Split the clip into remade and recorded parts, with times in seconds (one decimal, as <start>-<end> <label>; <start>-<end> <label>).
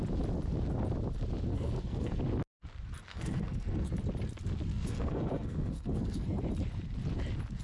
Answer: 0.0-1.5 recorded; 1.5-2.2 remade; 2.2-3.1 recorded; 3.1-3.9 remade; 3.9-4.7 recorded; 4.7-6.4 remade; 6.4-7.6 recorded